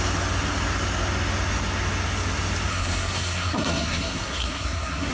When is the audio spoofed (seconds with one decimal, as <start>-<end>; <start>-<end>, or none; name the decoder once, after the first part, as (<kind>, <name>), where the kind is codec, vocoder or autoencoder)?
2.7-5.1 (codec, SNAC)